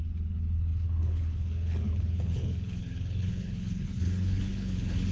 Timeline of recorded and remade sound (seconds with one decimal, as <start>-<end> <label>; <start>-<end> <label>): 0.0-5.1 remade